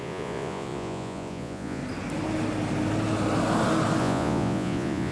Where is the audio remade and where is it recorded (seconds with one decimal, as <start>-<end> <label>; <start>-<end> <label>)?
0.0-1.8 remade; 1.8-4.0 recorded; 4.0-5.1 remade

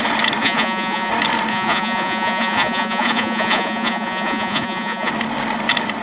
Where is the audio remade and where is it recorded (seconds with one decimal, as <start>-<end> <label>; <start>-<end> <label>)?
0.0-0.4 recorded; 0.4-1.1 remade; 1.1-1.5 recorded; 1.5-5.1 remade; 5.1-6.0 recorded

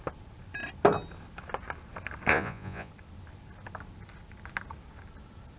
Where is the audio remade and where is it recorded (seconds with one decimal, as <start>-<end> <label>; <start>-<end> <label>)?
0.0-2.3 recorded; 2.3-2.9 remade; 2.9-5.6 recorded

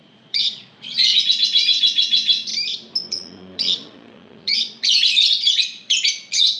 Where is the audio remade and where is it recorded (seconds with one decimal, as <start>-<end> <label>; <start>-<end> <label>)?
0.0-2.5 remade; 2.5-3.1 recorded; 3.1-6.6 remade

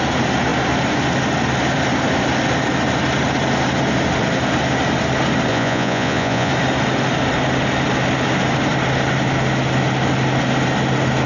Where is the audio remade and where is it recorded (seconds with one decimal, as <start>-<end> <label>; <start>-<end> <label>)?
0.0-5.5 recorded; 5.5-6.5 remade; 6.5-11.3 recorded

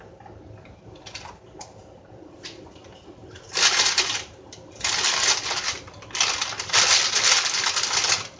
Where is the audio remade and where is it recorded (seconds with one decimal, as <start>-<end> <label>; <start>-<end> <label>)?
0.0-8.4 recorded

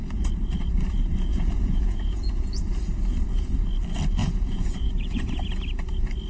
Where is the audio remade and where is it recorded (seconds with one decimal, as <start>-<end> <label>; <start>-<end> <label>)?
0.0-1.3 recorded; 1.3-2.6 remade; 2.6-4.2 recorded; 4.2-5.2 remade; 5.2-6.3 recorded